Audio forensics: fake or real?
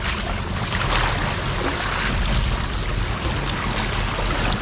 real